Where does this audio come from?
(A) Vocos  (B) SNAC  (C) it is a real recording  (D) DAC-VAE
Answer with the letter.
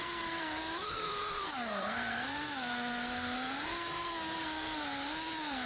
B